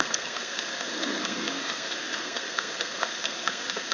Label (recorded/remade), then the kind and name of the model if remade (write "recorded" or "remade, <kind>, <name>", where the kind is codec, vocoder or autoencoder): remade, codec, SNAC